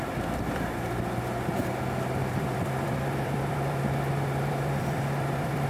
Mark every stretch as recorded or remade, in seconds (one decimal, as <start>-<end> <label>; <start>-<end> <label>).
0.0-2.2 recorded; 2.2-5.7 remade